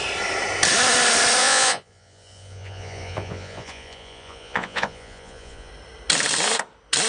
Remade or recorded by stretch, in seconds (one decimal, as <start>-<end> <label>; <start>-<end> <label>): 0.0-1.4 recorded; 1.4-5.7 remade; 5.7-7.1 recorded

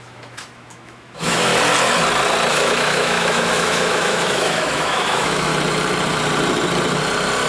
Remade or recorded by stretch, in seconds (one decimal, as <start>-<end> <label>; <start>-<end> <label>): 0.0-1.5 remade; 1.5-2.5 recorded; 2.5-5.5 remade; 5.5-7.5 recorded

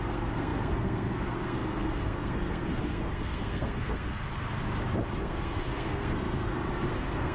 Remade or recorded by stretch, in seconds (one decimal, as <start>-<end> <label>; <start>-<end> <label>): 0.0-4.2 remade; 4.2-5.2 recorded; 5.2-7.3 remade

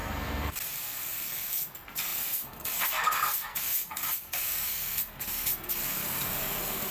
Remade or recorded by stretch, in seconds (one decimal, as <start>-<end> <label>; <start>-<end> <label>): 0.0-6.9 remade

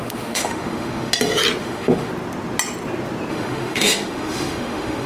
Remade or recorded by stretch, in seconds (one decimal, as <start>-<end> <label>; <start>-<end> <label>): 0.0-1.1 remade; 1.1-1.6 recorded; 1.6-2.1 remade; 2.1-3.3 recorded; 3.3-5.1 remade

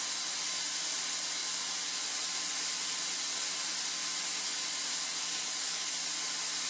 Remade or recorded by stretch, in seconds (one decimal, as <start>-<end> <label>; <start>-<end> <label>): 0.0-5.2 recorded; 5.2-5.9 remade; 5.9-6.7 recorded

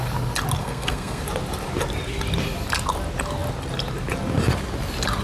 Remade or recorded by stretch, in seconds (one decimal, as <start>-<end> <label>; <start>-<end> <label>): 0.0-0.6 recorded; 0.6-1.2 remade; 1.2-5.2 recorded